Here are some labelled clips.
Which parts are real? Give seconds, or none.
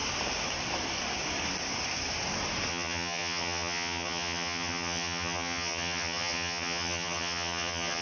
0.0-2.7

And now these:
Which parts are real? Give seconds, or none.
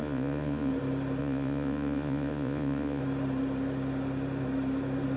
0.7-1.2; 3.0-5.2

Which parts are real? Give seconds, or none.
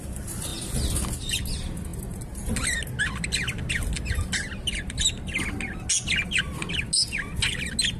0.0-8.0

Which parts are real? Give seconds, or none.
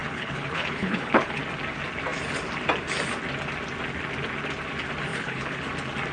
1.4-5.1; 5.6-6.1